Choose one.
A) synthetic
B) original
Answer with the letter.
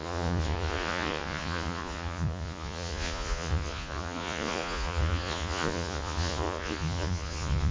A